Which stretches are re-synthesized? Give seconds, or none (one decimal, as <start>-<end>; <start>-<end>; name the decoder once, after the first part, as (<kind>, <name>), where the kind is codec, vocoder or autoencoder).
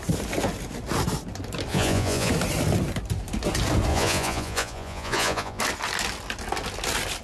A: 1.7-2.3 (vocoder, Vocos); 3.9-5.6